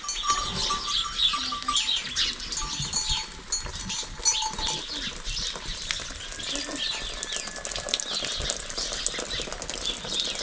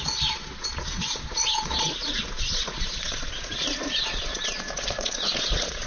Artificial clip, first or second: second